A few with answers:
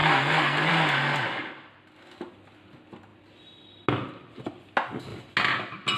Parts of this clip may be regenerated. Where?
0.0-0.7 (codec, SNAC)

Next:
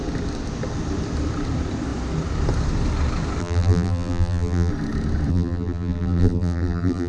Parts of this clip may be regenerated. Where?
3.4-4.7 (vocoder, BigVGAN v2); 5.3-7.1

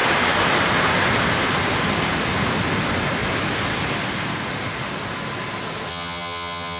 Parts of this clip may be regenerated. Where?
5.9-6.8 (vocoder, HiFi-GAN)

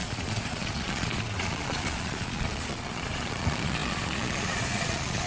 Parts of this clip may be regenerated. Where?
0.0-5.3 (vocoder, Vocos)

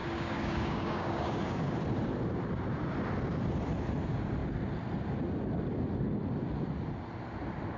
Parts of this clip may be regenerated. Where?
0.0-1.8 (codec, DAC)